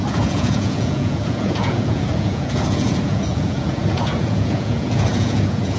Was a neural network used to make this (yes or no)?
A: yes